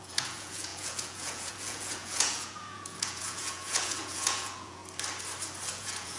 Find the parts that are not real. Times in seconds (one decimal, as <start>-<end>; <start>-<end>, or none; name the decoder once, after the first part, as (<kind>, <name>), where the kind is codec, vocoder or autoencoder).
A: 0.0-4.8 (vocoder, Vocos); 5.7-6.2